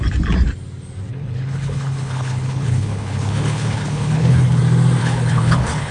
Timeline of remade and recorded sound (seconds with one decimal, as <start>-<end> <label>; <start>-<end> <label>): 0.0-1.1 recorded; 1.1-4.6 remade; 4.6-5.0 recorded; 5.0-5.9 remade